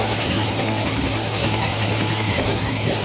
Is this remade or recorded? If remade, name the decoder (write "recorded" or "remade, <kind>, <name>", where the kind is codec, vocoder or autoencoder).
remade, codec, SNAC